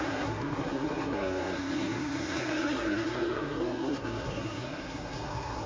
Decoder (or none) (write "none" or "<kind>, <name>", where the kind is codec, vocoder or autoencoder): codec, SNAC